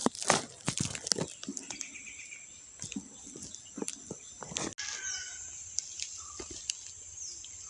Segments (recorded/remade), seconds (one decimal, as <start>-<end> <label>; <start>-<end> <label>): 0.0-7.7 recorded